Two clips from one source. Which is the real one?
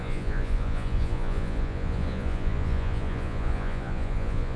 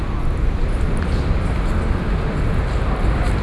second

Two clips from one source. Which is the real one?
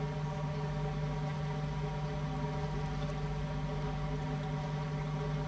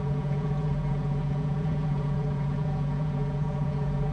first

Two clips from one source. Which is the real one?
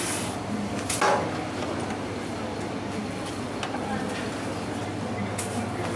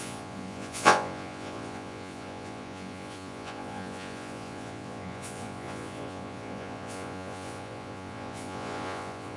first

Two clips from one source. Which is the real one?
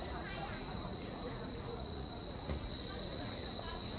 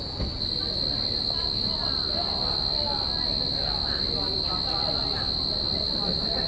second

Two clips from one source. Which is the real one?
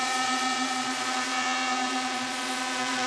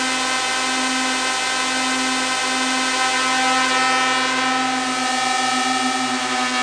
second